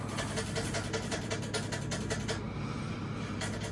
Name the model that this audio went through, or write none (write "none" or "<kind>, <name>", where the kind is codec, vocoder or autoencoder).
none